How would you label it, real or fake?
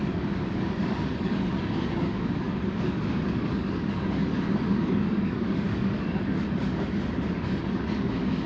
fake